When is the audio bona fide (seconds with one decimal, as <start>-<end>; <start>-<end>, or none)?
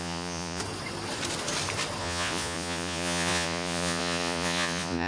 0.6-2.0